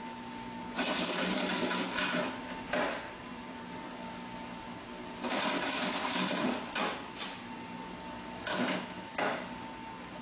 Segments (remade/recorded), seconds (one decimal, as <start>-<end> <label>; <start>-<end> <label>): 0.0-8.5 recorded; 8.5-9.5 remade; 9.5-10.2 recorded